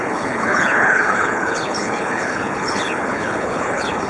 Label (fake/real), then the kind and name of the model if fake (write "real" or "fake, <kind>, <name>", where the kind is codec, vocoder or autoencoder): fake, codec, HILCodec